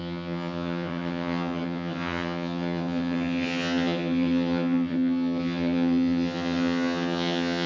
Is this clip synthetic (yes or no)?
yes